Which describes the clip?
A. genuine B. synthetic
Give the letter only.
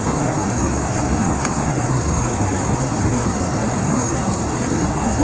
B